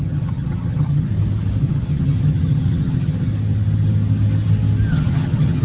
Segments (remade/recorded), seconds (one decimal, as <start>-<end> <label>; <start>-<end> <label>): 0.0-1.1 remade; 1.1-1.6 recorded; 1.6-3.3 remade; 3.3-4.9 recorded; 4.9-5.6 remade